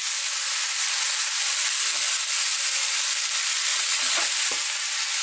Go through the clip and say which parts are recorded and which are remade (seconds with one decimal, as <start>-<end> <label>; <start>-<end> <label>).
0.0-3.7 recorded; 3.7-4.2 remade; 4.2-5.2 recorded